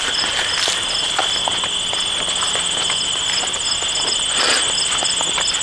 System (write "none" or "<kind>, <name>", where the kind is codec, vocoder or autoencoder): none